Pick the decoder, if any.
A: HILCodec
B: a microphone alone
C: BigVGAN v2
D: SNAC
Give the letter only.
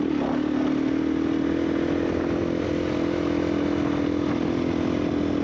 B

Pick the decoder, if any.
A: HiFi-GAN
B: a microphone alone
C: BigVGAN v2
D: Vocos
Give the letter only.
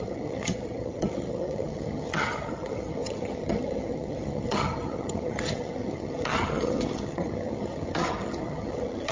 A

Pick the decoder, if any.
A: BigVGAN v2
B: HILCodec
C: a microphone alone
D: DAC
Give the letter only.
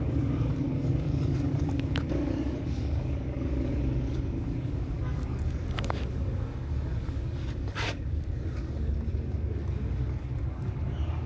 D